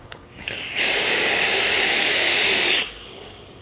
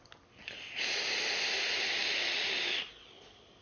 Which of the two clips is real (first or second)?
second